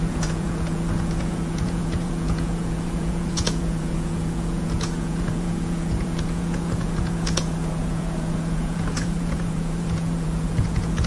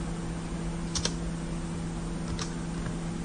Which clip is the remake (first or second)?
first